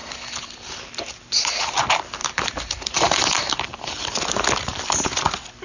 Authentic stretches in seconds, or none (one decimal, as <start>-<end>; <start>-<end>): 0.8-2.2; 3.9-5.6